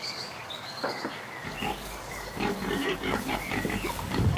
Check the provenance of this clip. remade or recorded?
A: remade